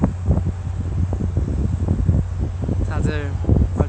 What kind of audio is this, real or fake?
real